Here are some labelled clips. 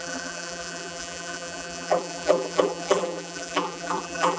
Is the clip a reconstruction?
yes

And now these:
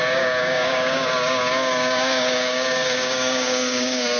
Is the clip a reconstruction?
yes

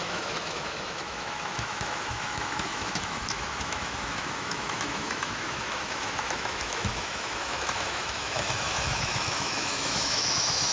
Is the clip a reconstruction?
yes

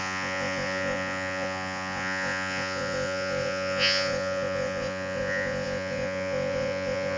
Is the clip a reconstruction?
yes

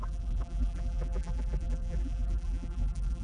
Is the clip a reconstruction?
yes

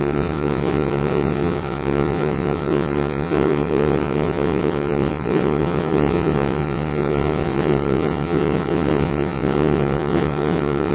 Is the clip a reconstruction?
yes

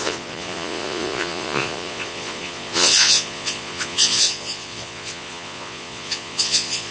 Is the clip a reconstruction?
yes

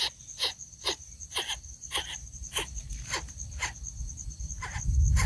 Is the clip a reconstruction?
no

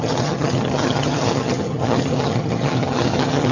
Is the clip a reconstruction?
yes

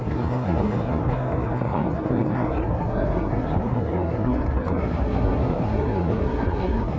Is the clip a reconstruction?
yes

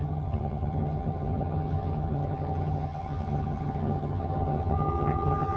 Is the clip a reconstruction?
yes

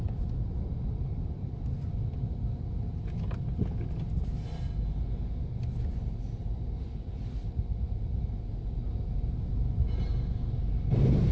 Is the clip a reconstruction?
no